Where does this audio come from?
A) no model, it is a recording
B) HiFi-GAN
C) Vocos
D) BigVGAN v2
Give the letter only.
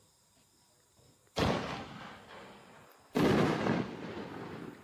A